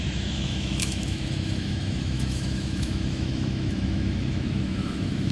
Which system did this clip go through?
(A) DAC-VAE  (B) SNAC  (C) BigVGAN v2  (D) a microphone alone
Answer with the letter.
A